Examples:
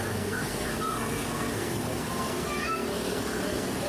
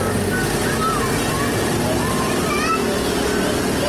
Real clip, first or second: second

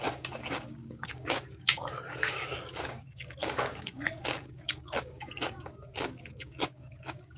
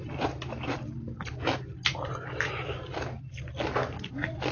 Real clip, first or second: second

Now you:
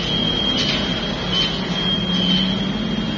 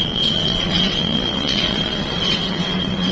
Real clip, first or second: first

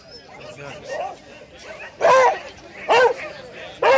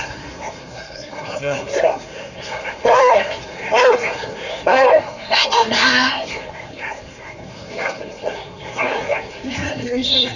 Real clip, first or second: first